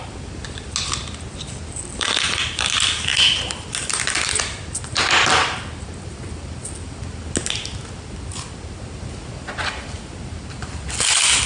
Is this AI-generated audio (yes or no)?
no